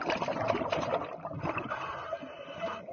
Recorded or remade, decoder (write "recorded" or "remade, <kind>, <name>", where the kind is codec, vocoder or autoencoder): recorded